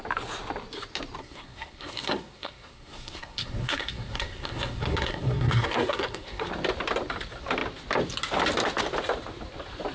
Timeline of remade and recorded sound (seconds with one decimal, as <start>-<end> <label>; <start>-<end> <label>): 0.0-1.2 recorded; 1.2-6.5 remade; 6.5-9.9 recorded